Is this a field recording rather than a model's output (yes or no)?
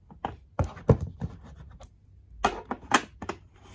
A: yes